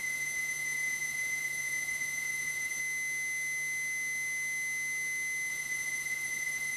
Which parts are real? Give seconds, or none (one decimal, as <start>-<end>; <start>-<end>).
2.8-5.5